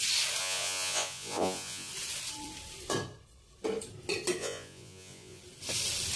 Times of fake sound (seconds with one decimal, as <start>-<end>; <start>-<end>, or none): 0.4-1.9; 4.4-5.4